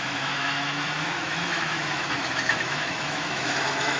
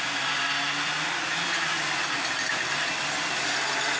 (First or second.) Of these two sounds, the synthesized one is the first